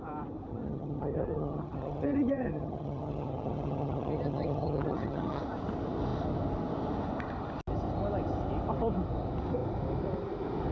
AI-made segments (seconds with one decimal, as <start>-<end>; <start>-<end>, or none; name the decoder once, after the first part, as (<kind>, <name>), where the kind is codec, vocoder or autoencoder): 0.5-5.4 (vocoder, HiFi-GAN)